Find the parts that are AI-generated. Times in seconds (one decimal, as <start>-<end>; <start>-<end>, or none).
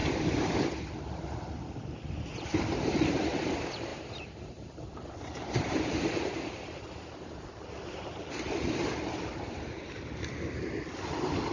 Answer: 3.9-8.5